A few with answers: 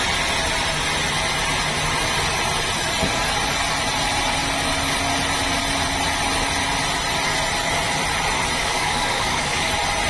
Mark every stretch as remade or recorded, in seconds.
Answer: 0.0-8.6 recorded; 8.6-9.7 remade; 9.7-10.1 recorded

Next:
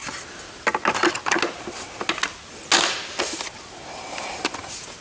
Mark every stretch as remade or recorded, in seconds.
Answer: 0.0-5.0 recorded

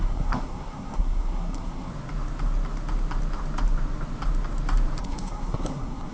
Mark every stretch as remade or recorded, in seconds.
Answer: 0.0-1.9 remade; 1.9-5.0 recorded; 5.0-6.1 remade

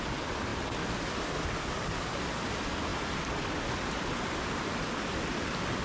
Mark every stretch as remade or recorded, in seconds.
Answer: 0.0-5.8 recorded

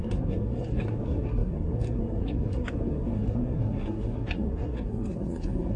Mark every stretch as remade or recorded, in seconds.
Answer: 0.0-5.8 remade